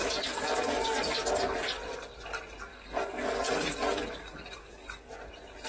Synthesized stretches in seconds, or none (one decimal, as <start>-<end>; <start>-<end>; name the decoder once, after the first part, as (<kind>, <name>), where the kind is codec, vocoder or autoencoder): 0.0-1.0 (codec, DAC); 2.7-5.1